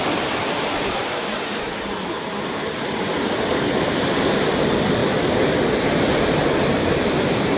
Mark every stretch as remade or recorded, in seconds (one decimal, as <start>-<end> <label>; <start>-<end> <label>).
0.0-6.8 recorded; 6.8-7.6 remade